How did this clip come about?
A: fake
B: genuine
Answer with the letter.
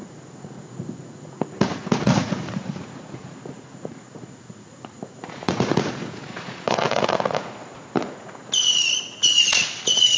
A